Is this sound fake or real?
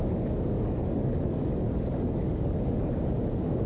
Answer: fake